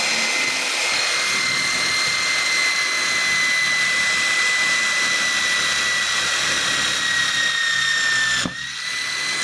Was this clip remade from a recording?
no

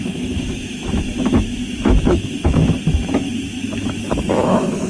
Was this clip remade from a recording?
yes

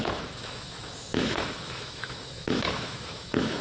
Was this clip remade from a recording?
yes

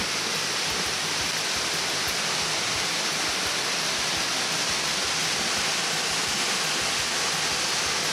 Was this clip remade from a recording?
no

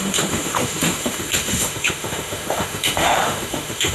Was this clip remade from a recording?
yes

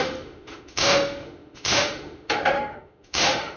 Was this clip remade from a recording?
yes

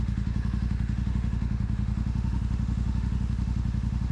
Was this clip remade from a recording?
yes